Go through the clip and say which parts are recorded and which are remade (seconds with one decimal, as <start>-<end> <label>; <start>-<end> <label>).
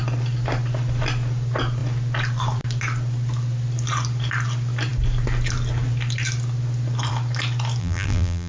0.0-7.8 recorded; 7.8-8.5 remade